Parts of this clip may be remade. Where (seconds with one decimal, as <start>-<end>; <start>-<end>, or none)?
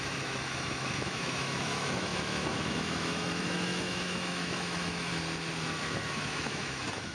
0.0-5.1; 5.8-7.1